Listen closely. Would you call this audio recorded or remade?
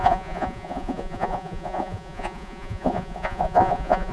remade